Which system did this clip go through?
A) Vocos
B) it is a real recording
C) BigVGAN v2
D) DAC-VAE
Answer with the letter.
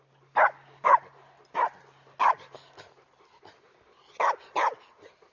B